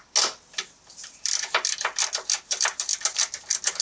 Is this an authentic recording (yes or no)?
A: yes